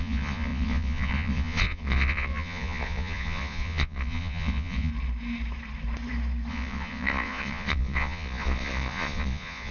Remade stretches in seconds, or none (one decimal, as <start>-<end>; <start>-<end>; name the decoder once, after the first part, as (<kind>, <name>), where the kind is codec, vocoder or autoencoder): 0.0-4.9 (vocoder, Vocos); 6.5-9.7

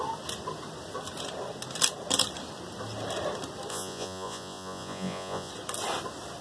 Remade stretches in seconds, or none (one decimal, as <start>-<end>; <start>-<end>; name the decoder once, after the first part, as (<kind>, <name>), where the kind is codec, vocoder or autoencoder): 3.7-5.5 (vocoder, Vocos)

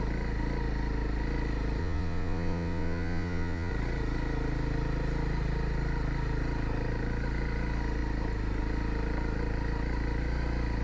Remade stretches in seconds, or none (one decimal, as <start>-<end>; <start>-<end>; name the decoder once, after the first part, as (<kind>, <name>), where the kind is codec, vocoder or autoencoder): 1.8-3.7 (vocoder, Vocos)